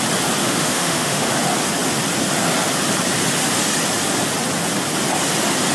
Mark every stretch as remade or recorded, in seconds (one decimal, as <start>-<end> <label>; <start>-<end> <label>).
0.0-0.4 recorded; 0.4-1.3 remade; 1.3-5.7 recorded